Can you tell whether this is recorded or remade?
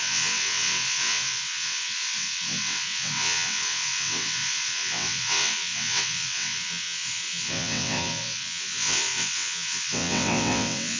remade